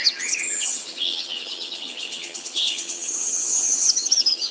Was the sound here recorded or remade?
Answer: remade